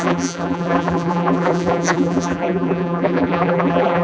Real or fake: fake